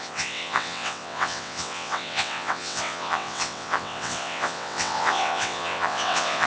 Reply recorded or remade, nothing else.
remade